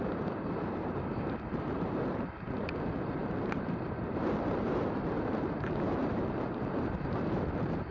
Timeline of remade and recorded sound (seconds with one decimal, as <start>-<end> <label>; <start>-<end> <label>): 0.0-7.9 remade